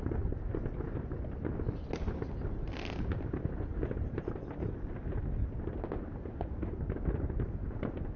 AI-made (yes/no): no